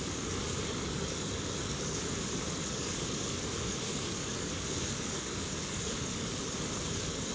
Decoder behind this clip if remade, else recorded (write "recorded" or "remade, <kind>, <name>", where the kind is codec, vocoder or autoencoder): remade, codec, DAC